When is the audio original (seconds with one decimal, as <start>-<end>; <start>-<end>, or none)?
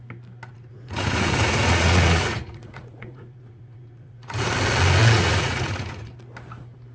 0.0-0.5; 4.5-5.0; 6.1-6.9